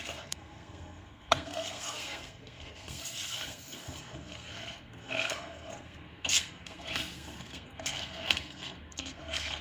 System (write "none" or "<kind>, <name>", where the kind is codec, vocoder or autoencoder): codec, SNAC